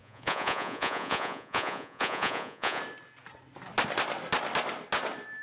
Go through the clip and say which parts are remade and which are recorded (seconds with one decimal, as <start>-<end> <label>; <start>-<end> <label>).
0.0-2.8 remade; 2.8-5.4 recorded